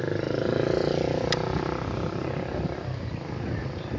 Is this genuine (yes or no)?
yes